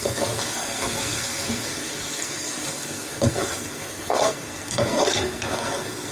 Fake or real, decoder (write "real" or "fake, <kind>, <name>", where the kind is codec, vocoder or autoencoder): fake, codec, SNAC